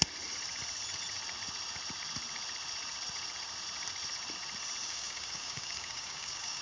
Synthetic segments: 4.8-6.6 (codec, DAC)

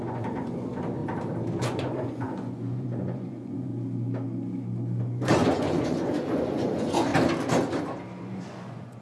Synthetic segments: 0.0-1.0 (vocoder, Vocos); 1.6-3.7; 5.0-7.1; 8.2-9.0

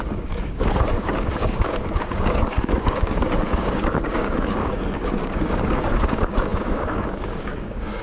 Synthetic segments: 0.0-8.0 (codec, DAC)

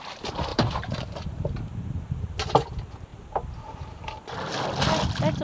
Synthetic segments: 0.5-2.4 (vocoder, BigVGAN v2); 3.1-4.2